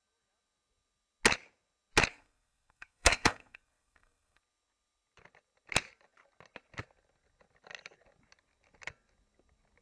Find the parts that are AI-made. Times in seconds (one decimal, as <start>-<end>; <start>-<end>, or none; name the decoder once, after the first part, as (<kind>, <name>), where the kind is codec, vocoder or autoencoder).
2.1-4.4 (codec, SNAC)